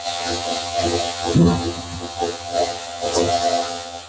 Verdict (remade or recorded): remade